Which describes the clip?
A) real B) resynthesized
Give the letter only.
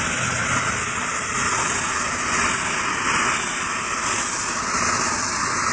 A